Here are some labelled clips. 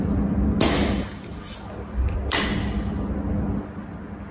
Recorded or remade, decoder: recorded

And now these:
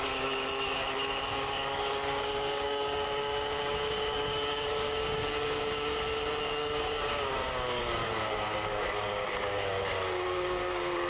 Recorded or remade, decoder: remade, codec, DAC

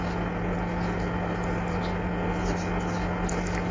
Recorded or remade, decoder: recorded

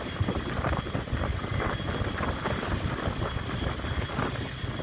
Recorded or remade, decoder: recorded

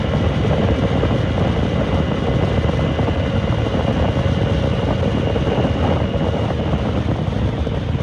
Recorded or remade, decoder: recorded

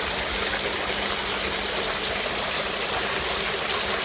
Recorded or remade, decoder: recorded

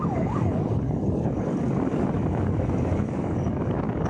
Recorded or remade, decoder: remade, codec, DAC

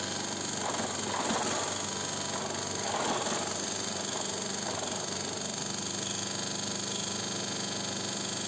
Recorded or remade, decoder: recorded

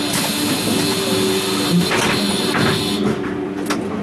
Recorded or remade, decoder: recorded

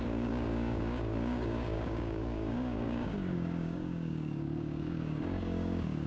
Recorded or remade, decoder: remade, codec, DAC